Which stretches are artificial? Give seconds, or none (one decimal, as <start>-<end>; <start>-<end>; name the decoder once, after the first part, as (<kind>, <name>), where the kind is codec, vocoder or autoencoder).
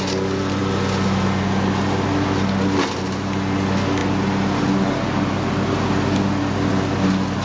none